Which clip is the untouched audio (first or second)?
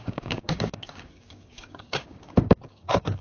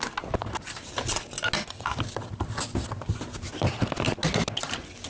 second